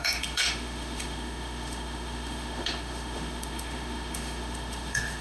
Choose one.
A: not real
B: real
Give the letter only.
A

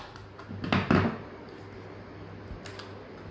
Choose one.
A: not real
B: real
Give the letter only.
B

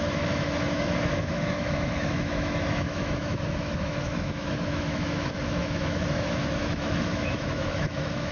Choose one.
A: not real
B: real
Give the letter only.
A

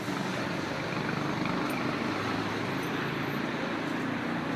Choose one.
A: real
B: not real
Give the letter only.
A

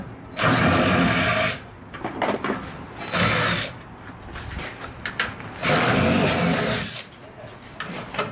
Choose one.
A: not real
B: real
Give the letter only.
B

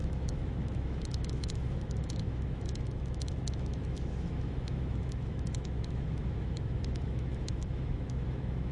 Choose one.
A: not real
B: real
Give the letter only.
A